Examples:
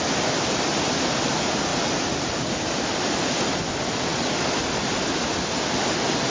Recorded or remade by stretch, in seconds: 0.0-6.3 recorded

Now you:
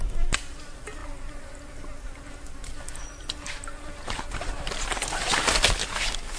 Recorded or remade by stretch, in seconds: 0.0-5.8 recorded; 5.8-6.4 remade

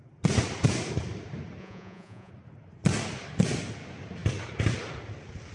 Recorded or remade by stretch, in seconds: 0.0-1.6 recorded; 1.6-2.3 remade; 2.3-5.5 recorded

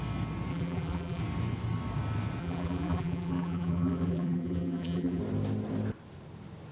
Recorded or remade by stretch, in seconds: 0.0-0.5 recorded; 0.5-1.2 remade; 1.2-2.4 recorded; 2.4-5.2 remade; 5.2-6.7 recorded

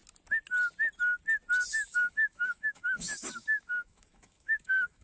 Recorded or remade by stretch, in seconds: 0.0-1.7 recorded; 1.7-5.0 remade

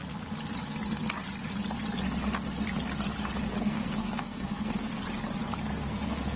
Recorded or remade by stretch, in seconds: 0.0-3.6 recorded; 3.6-5.0 remade; 5.0-5.8 recorded; 5.8-6.4 remade

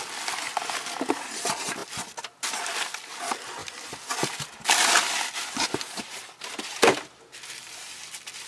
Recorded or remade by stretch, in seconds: 0.0-8.5 recorded

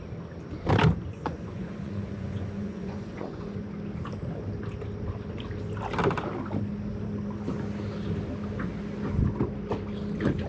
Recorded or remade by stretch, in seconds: 0.0-1.1 recorded; 1.1-3.7 remade; 3.7-10.5 recorded